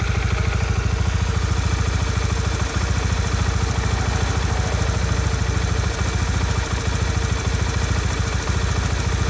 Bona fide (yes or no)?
yes